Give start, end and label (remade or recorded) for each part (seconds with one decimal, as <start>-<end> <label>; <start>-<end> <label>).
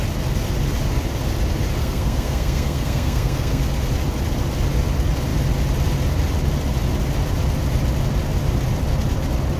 0.0-1.8 recorded; 1.8-3.6 remade; 3.6-9.6 recorded